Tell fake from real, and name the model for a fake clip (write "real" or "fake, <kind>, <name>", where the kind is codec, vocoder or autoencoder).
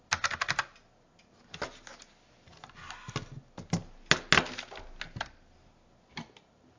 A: real